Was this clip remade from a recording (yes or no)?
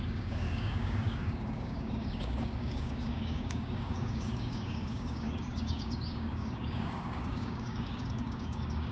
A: yes